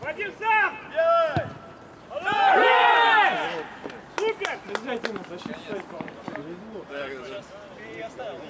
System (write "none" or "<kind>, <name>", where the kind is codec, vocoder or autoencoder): none